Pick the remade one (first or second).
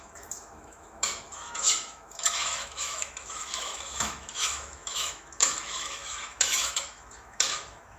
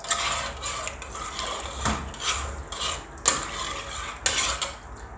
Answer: first